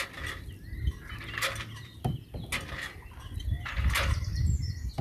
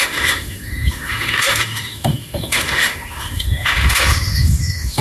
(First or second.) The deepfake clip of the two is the second